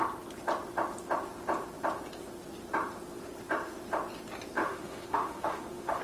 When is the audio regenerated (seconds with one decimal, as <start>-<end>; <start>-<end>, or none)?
4.6-6.0